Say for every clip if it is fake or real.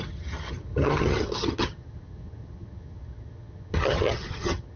fake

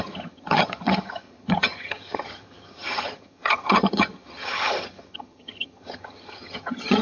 fake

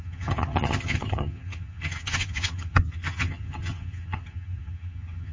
fake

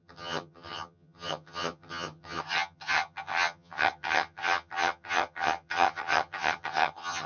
fake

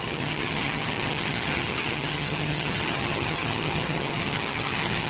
fake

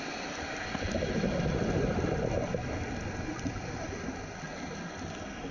real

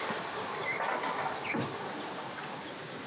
real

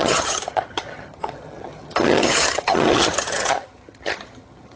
fake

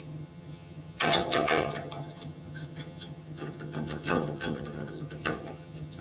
fake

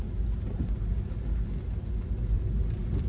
real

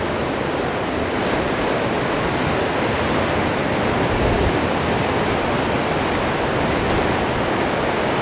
real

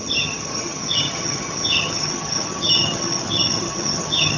fake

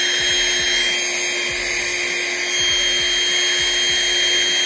real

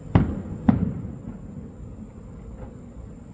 real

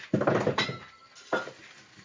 real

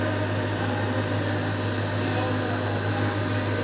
real